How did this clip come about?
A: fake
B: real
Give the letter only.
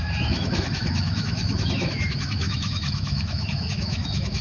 A